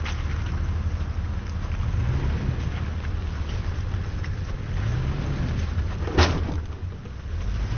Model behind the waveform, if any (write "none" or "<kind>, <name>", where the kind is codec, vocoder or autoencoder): none